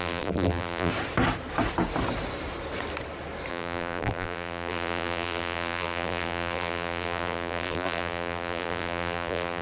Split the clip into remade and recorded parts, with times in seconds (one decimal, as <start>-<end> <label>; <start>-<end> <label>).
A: 0.0-0.9 remade; 0.9-3.5 recorded; 3.5-9.6 remade